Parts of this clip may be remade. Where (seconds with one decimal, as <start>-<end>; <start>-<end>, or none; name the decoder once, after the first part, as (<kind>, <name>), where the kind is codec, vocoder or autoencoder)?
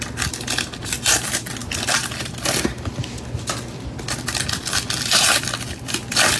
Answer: none